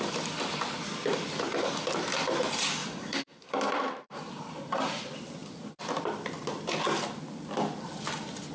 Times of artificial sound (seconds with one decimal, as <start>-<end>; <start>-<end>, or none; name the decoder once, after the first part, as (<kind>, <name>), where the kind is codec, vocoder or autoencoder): 2.8-5.0 (vocoder, BigVGAN v2)